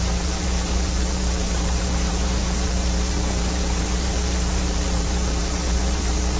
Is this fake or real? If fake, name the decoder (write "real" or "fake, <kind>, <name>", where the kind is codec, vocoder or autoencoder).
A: fake, vocoder, BigVGAN v2